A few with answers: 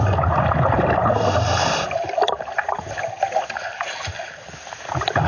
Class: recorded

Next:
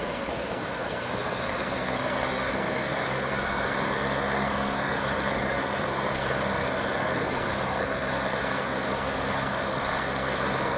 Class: remade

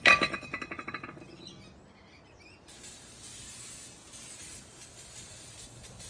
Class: recorded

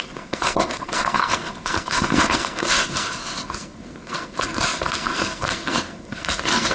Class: remade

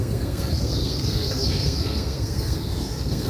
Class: remade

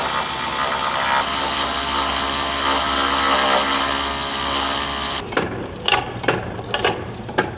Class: recorded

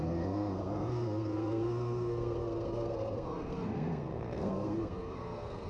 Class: remade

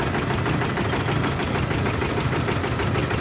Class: recorded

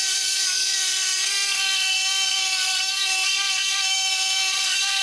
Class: remade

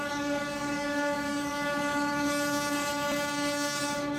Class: remade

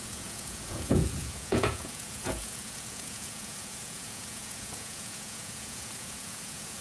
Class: remade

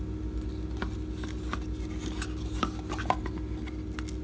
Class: recorded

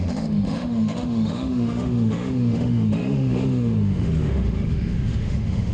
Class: remade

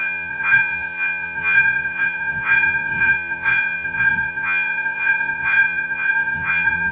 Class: remade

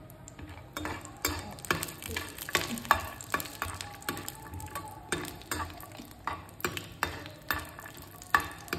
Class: recorded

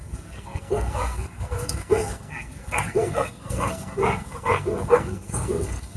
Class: remade